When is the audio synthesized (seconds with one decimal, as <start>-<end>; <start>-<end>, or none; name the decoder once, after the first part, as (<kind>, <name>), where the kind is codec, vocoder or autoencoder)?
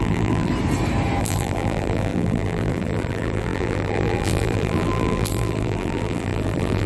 0.0-0.5 (vocoder, BigVGAN v2); 1.2-6.9